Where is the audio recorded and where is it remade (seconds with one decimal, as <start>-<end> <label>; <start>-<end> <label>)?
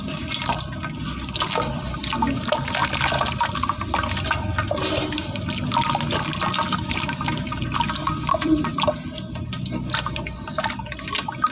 0.0-11.5 recorded